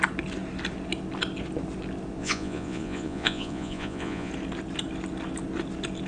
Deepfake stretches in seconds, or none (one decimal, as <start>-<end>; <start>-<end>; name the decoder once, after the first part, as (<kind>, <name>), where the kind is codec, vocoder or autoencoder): 2.2-4.3 (vocoder, Vocos)